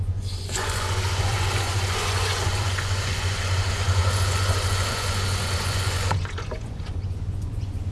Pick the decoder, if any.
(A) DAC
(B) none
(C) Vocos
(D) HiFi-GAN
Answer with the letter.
C